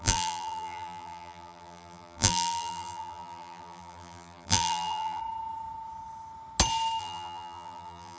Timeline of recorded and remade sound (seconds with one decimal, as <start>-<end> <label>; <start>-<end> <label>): 0.0-5.2 remade; 5.2-7.0 recorded; 7.0-8.2 remade